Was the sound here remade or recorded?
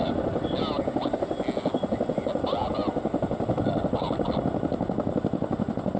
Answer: recorded